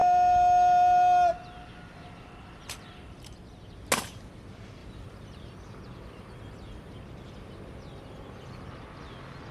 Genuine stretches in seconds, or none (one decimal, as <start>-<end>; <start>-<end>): 0.0-4.8; 8.7-9.5